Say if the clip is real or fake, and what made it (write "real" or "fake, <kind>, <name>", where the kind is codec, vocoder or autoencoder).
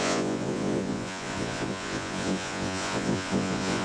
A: fake, vocoder, Vocos